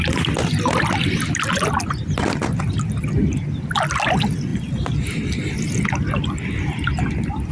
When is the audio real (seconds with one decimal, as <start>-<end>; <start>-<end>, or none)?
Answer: 0.0-7.5